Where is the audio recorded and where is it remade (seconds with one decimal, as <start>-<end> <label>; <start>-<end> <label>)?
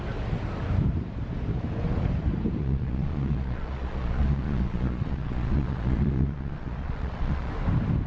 0.0-2.6 recorded; 2.6-7.5 remade; 7.5-8.1 recorded